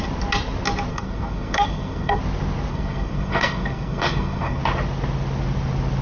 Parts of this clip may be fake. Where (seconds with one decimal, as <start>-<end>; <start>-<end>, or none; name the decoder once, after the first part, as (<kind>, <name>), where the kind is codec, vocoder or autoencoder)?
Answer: 0.9-2.2 (codec, SNAC); 2.7-4.6